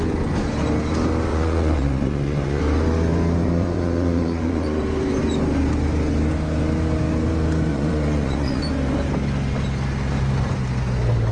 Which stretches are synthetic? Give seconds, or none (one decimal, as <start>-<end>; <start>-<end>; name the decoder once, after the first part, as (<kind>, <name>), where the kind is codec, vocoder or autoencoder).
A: 1.3-2.6 (vocoder, Vocos); 3.4-4.8; 7.7-8.6